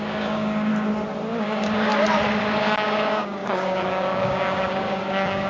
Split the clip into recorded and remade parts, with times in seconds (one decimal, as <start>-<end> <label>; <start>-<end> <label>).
0.0-0.7 remade; 0.7-1.4 recorded; 1.4-1.9 remade; 1.9-2.6 recorded; 2.6-5.5 remade